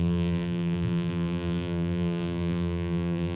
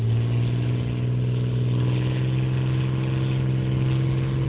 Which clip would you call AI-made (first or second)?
first